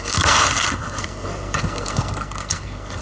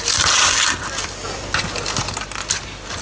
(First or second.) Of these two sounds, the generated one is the first